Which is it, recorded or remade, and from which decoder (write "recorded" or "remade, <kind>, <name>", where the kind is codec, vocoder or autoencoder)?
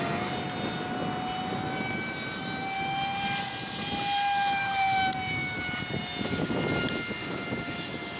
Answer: recorded